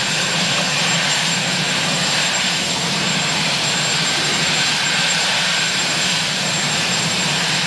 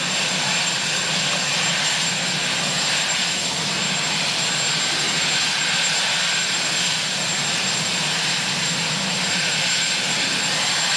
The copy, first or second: first